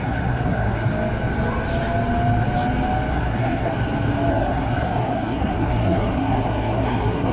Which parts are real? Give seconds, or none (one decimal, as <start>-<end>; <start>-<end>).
0.9-3.1; 3.7-4.3